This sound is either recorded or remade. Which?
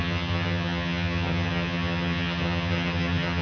remade